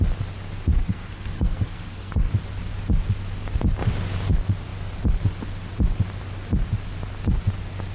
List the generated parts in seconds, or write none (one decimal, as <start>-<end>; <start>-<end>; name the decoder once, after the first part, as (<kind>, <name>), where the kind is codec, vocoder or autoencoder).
0.7-2.3 (codec, SNAC)